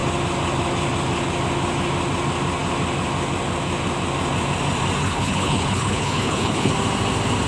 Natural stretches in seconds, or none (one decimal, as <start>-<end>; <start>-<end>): 0.0-5.0; 6.7-7.5